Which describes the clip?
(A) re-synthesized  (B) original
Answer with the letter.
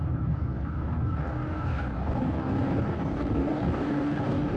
A